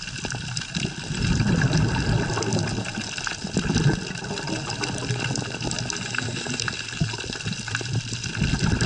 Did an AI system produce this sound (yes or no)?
no